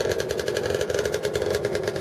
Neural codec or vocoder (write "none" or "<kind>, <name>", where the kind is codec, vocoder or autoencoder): none